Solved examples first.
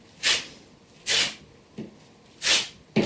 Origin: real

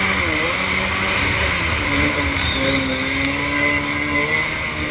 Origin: real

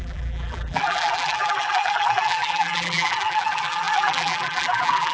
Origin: fake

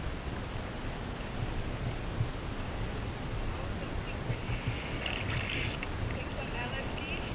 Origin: real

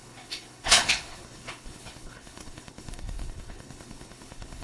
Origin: fake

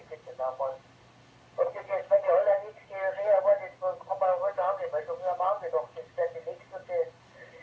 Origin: real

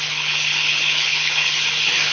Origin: fake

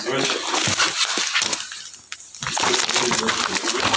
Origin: real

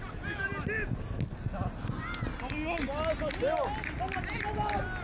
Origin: real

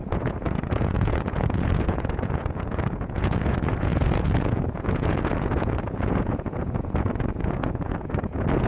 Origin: fake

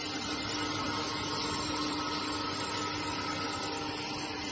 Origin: real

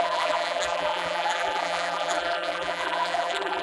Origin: fake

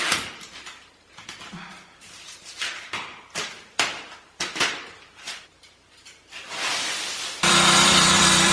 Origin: fake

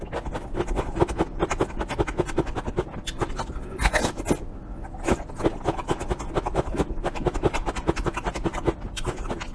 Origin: real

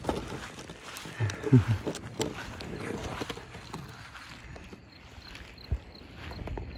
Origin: real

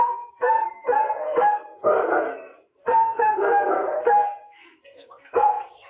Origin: fake